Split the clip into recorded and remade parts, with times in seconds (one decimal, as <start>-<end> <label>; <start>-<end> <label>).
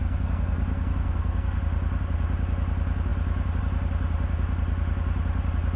0.0-1.6 remade; 1.6-5.8 recorded